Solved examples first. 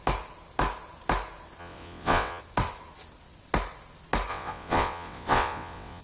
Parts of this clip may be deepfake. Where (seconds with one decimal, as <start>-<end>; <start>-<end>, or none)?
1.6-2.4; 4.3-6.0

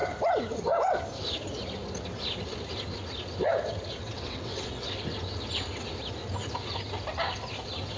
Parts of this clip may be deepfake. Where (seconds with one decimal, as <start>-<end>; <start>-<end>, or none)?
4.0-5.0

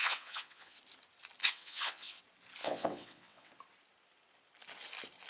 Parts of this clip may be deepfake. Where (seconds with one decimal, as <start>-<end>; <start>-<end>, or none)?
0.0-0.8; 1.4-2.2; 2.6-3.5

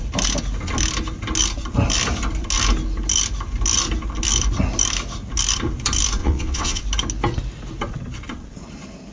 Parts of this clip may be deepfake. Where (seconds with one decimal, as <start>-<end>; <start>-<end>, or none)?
6.2-6.8

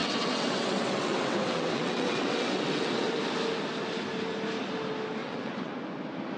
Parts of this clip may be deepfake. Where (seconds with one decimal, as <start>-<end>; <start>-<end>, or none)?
0.0-3.2; 5.2-5.7

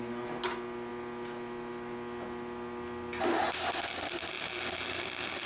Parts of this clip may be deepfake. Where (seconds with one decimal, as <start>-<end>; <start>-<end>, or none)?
none

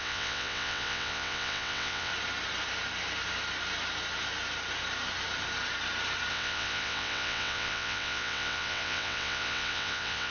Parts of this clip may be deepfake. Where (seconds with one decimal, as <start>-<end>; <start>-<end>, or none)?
0.0-2.1; 6.3-10.3

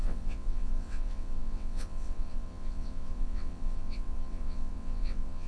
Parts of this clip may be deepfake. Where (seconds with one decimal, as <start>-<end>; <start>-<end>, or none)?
0.0-5.5